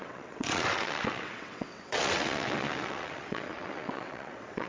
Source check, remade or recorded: remade